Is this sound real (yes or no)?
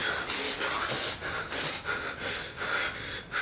yes